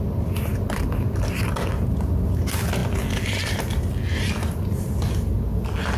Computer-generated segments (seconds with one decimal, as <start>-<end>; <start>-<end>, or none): none